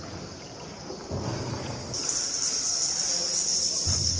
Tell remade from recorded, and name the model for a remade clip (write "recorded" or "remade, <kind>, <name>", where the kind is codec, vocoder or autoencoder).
recorded